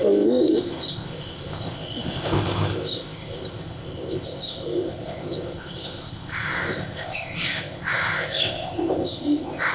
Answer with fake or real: fake